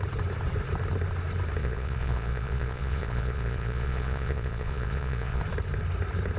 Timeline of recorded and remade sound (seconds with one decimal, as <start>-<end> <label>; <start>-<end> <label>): 0.0-1.6 recorded; 1.6-5.4 remade; 5.4-6.4 recorded